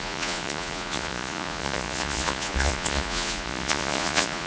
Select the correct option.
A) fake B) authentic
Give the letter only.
A